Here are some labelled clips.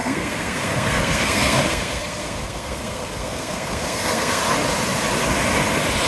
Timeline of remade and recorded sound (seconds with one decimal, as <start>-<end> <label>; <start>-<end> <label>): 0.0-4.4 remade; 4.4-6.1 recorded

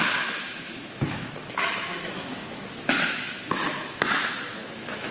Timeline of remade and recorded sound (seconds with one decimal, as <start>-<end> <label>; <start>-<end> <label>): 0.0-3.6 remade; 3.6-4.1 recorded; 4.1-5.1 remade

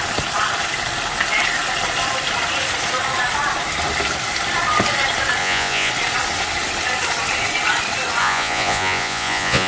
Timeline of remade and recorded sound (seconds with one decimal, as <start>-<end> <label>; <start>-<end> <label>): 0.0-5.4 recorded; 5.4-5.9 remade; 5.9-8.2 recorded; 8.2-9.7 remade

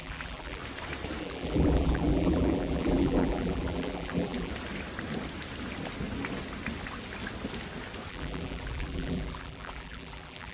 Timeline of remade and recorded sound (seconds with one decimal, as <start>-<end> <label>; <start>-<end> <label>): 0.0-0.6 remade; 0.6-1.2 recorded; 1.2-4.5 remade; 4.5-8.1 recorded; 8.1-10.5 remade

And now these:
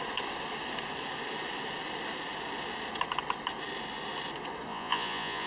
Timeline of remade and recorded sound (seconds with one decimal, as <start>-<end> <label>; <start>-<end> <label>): 0.0-4.7 recorded; 4.7-5.5 remade